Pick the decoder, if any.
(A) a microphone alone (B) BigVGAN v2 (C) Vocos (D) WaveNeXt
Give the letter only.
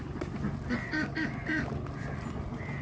A